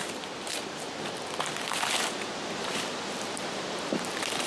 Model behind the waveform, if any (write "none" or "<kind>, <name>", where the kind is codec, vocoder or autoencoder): vocoder, BigVGAN v2